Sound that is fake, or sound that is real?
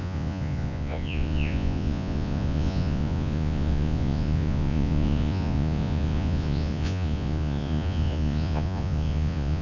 fake